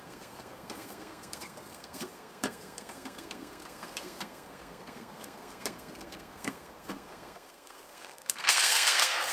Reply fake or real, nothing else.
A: fake